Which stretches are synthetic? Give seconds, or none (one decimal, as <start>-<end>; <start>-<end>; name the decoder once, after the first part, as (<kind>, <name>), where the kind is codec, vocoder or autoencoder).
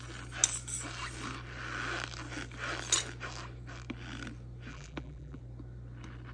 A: 4.7-5.4 (vocoder, BigVGAN v2)